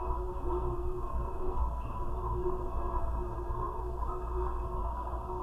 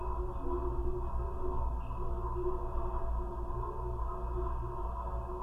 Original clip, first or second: second